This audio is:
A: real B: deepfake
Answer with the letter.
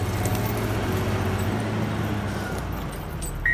A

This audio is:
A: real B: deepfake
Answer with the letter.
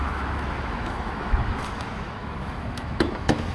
B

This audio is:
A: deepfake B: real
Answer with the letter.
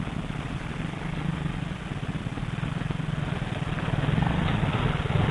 B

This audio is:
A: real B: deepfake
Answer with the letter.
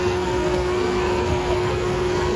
B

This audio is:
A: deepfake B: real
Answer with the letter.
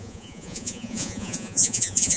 A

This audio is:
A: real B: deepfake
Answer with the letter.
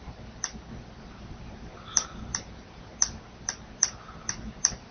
A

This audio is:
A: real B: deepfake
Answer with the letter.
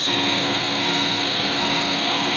B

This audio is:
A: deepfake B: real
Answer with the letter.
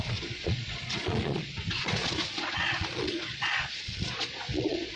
A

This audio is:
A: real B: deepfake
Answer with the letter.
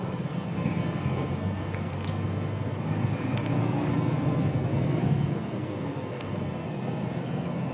B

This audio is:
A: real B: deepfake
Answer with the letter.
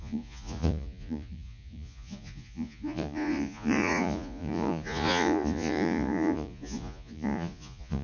B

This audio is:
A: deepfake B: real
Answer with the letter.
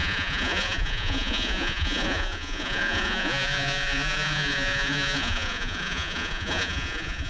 A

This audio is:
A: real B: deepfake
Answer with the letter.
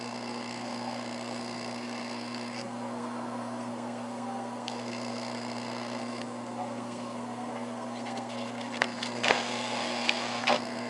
B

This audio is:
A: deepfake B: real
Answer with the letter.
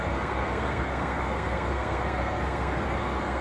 A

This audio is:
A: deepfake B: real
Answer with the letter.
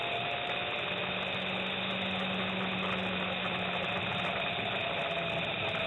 B